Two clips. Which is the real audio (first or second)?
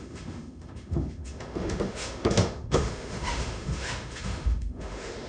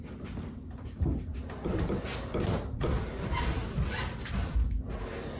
second